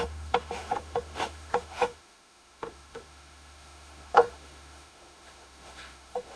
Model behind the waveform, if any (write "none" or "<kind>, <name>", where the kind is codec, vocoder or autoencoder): autoencoder, DAC-VAE